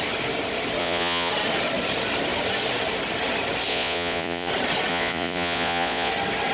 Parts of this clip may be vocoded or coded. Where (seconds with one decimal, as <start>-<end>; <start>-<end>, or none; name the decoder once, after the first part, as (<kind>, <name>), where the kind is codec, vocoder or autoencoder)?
0.8-1.3 (vocoder, Vocos); 3.7-4.5; 4.9-6.1